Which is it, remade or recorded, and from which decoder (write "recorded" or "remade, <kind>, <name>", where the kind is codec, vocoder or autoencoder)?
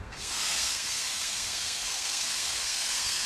remade, codec, SNAC